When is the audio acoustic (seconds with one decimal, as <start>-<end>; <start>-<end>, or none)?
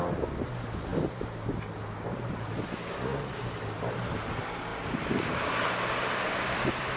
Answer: 0.0-7.0